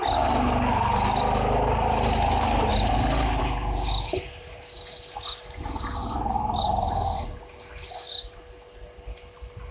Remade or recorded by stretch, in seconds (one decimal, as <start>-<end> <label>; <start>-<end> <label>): 0.0-6.0 recorded; 6.0-7.4 remade; 7.4-9.7 recorded